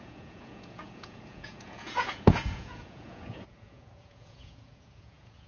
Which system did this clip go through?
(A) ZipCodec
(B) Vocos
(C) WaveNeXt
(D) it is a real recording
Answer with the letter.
B